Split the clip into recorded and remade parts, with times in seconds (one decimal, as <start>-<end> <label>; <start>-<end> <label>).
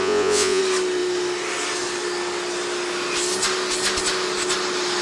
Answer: 0.0-0.6 remade; 0.6-5.0 recorded